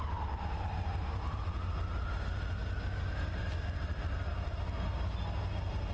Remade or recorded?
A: recorded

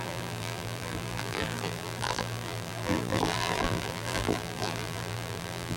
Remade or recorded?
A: remade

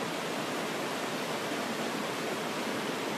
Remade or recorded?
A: recorded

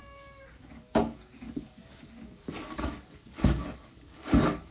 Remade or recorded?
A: remade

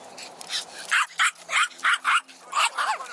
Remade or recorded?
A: recorded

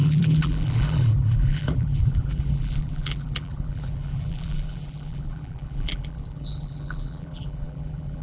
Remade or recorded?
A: remade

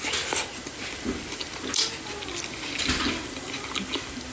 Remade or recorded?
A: recorded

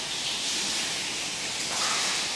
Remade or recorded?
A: recorded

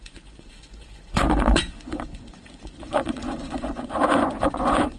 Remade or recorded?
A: remade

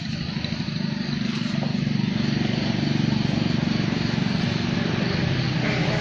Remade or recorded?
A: recorded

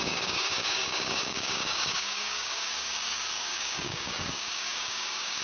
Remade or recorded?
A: remade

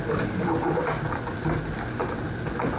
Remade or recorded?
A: recorded